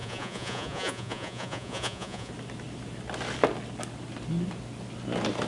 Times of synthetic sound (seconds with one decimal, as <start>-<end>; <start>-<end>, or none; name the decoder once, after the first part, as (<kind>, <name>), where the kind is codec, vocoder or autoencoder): 0.0-2.3 (vocoder, Vocos)